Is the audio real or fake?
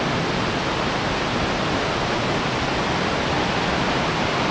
real